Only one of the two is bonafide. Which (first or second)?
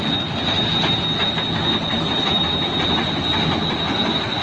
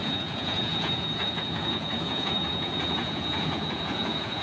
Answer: first